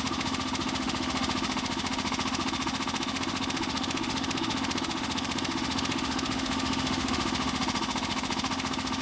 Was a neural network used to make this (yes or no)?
yes